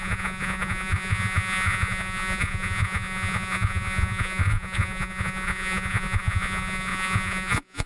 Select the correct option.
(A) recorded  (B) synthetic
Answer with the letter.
B